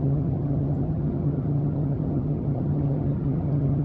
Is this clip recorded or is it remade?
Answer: remade